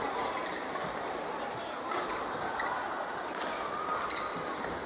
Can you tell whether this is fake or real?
fake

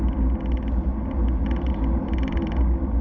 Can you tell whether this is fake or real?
real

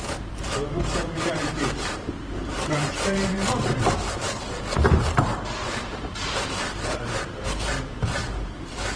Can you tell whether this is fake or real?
fake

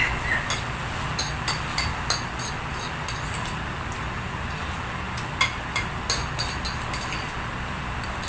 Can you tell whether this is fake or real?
real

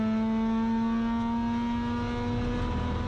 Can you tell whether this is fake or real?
real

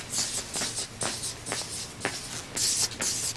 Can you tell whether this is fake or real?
real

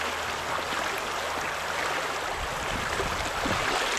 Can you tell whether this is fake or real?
real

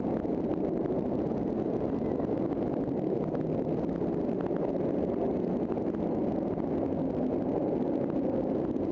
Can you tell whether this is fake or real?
real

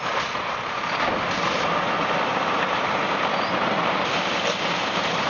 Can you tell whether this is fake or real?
fake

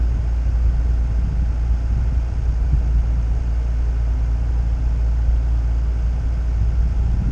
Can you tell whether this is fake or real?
real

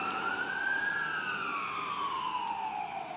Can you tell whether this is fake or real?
fake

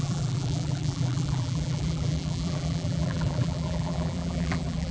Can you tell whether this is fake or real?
fake